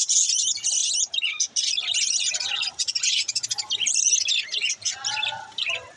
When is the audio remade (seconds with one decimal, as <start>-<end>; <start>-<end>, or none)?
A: none